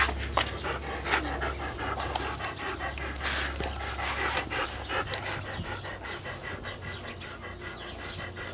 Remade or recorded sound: recorded